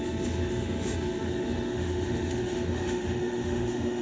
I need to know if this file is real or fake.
fake